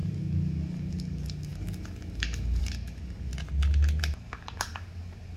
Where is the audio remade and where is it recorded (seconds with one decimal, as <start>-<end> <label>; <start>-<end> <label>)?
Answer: 0.0-3.3 remade; 3.3-4.0 recorded; 4.0-5.4 remade